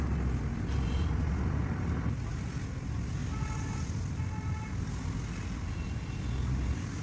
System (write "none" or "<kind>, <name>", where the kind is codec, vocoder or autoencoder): none